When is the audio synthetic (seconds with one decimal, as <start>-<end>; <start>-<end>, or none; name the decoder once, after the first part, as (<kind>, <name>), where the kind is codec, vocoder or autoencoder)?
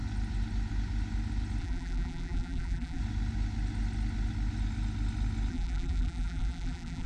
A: 1.6-3.0 (vocoder, BigVGAN v2); 5.5-7.1